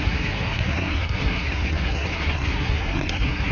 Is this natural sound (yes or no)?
no